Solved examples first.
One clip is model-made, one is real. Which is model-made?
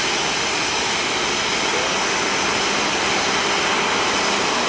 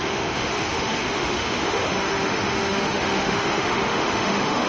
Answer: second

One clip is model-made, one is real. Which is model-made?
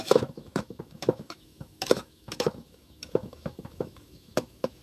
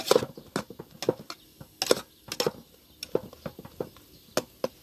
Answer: first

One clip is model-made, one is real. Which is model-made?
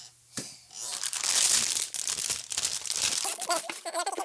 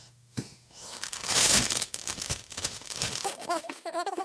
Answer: second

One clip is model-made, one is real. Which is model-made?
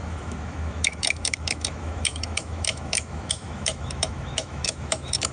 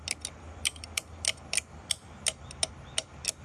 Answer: first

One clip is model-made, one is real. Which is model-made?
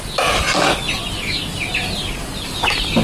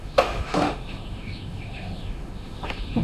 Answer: second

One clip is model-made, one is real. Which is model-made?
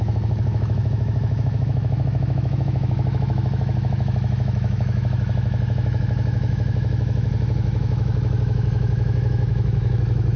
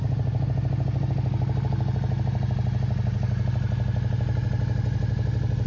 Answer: first